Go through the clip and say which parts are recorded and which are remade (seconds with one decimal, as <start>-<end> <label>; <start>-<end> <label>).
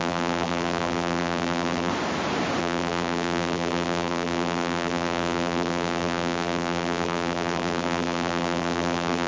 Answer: 0.0-1.9 remade; 1.9-2.6 recorded; 2.6-9.3 remade